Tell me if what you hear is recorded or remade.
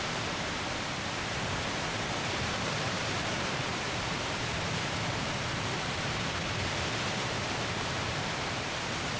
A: remade